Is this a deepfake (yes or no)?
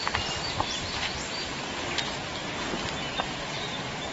no